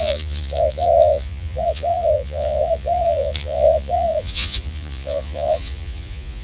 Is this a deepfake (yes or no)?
yes